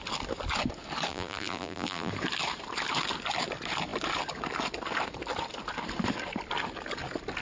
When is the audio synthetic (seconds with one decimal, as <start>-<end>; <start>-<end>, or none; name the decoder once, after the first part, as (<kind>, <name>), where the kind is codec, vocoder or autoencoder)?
1.1-2.1 (vocoder, BigVGAN v2)